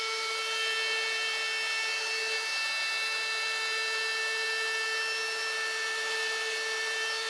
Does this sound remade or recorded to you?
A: recorded